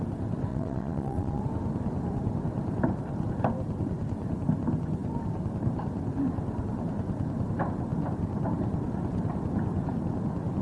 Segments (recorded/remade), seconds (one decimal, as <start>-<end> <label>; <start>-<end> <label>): 0.0-0.5 recorded; 0.5-1.4 remade; 1.4-10.6 recorded